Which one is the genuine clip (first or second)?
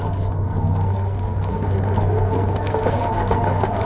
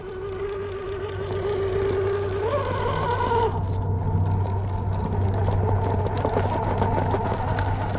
second